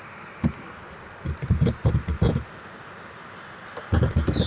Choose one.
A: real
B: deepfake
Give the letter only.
B